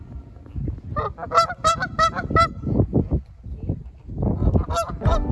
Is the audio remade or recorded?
recorded